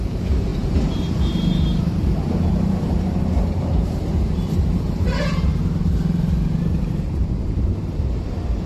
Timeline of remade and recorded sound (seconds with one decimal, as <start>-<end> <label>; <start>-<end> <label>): 0.0-5.5 remade; 5.5-6.6 recorded; 6.6-8.7 remade

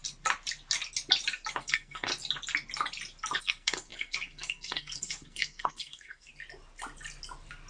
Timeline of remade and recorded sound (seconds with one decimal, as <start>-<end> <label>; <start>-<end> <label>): 0.0-1.6 recorded; 1.6-2.1 remade; 2.1-3.4 recorded; 3.4-6.3 remade; 6.3-7.7 recorded

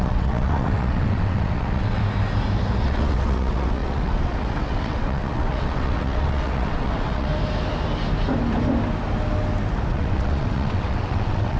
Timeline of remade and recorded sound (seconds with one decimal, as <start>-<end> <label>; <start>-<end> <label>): 0.0-2.0 remade; 2.0-2.8 recorded; 2.8-7.3 remade; 7.3-9.9 recorded; 9.9-11.6 remade

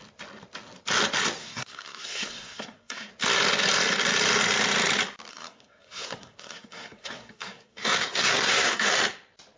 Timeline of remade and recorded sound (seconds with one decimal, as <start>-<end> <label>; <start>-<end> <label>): 0.0-1.4 recorded; 1.4-3.1 remade; 3.1-5.3 recorded; 5.3-8.9 remade; 8.9-9.6 recorded